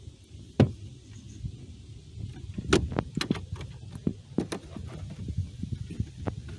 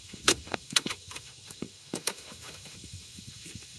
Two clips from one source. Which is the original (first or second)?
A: first